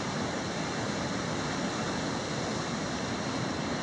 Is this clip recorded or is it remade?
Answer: recorded